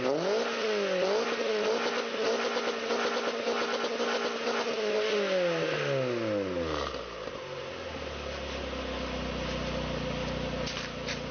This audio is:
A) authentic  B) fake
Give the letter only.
A